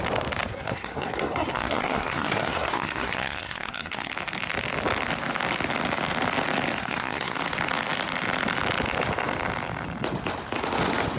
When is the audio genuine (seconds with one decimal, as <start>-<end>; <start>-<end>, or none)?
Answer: 0.0-0.5; 4.1-6.8; 7.4-11.2